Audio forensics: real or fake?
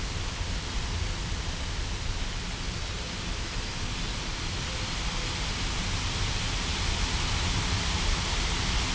real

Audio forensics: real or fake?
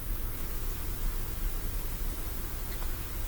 fake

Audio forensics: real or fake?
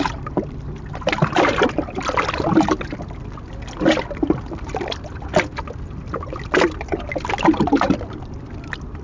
real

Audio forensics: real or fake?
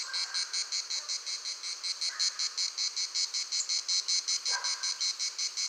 real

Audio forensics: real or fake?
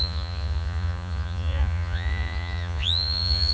fake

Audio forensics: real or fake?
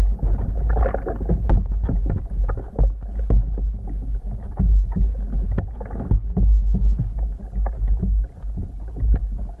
real